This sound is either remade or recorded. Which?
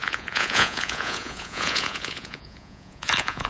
remade